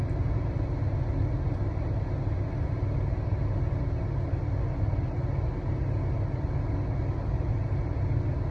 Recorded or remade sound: recorded